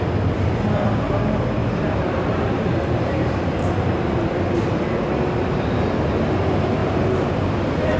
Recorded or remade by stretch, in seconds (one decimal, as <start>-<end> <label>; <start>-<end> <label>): 0.0-1.6 recorded; 1.6-4.2 remade; 4.2-6.8 recorded; 6.8-8.0 remade